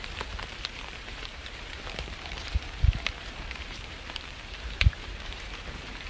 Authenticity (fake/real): fake